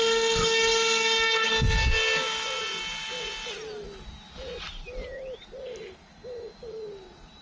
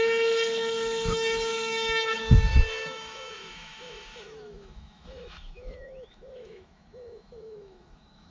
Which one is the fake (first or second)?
second